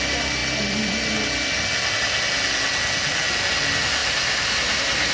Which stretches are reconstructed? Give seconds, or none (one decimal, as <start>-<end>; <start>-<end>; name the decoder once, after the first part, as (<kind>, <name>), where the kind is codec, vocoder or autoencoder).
4.0-5.1 (vocoder, BigVGAN v2)